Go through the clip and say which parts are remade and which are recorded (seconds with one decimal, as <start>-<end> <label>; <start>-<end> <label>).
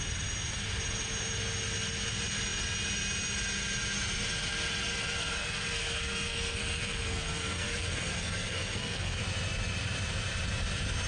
0.0-4.9 recorded; 4.9-9.2 remade; 9.2-11.1 recorded